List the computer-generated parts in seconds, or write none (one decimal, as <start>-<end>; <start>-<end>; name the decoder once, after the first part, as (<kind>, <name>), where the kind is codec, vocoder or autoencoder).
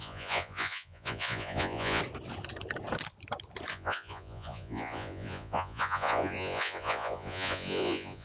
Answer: 0.0-2.0 (vocoder, Vocos); 3.7-8.2